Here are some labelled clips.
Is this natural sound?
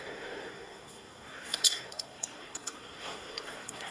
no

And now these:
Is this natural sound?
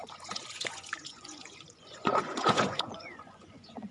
no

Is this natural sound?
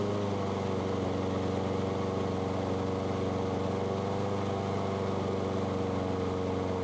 yes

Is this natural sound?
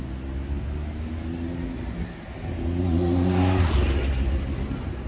yes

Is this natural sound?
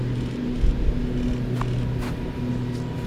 yes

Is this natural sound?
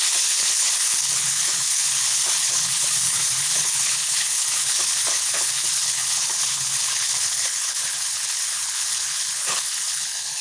no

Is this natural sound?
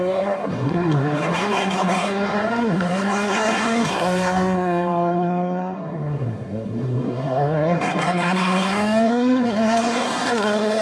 no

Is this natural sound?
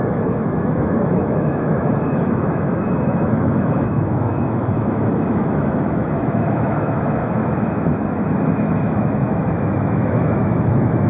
no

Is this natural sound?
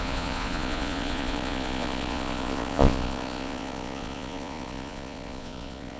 no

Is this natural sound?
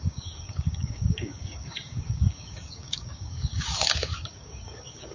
no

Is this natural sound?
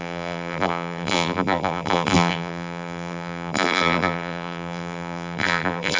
no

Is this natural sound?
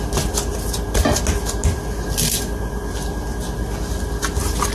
yes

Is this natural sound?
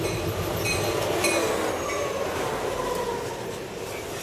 yes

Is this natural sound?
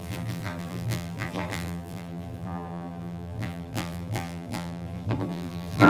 no